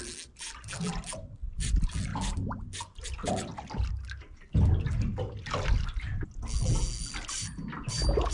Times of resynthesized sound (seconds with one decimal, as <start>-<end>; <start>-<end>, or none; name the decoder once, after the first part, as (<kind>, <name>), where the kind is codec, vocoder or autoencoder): none